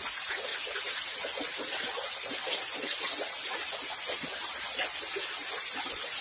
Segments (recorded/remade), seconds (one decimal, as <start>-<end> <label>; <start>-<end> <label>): 0.0-6.2 recorded